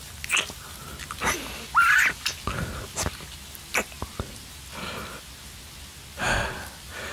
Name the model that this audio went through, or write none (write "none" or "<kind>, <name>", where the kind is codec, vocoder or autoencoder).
none